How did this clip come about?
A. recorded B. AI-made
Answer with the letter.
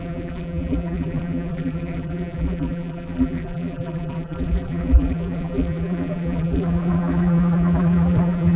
B